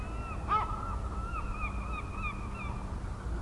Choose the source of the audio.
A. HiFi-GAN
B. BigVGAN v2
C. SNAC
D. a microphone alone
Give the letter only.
D